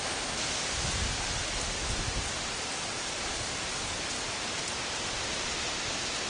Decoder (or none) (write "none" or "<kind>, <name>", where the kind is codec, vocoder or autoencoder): none